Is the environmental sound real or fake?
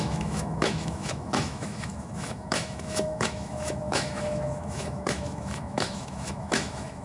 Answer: fake